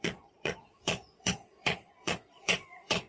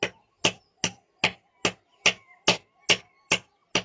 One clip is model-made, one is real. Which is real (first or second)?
second